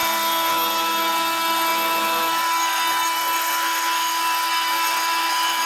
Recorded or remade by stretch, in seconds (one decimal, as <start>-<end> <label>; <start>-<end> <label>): 0.0-5.7 remade